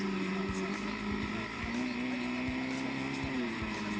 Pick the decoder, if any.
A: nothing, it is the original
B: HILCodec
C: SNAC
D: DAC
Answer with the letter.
A